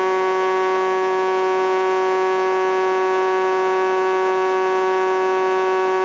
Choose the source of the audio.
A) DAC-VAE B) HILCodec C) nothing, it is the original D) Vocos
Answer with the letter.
D